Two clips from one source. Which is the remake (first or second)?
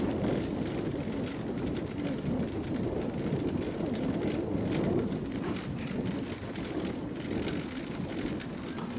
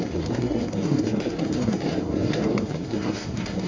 second